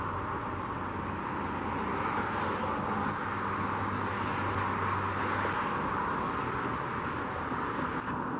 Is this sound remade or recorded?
recorded